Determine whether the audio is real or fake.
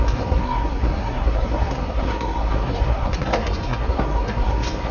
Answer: fake